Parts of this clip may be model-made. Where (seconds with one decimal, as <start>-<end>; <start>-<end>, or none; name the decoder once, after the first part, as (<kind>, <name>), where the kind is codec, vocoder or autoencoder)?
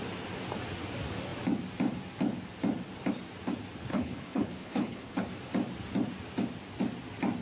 3.9-5.2 (codec, HILCodec)